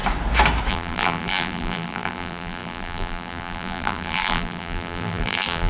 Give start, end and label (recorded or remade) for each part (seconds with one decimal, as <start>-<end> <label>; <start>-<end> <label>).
0.0-0.7 recorded; 0.7-5.7 remade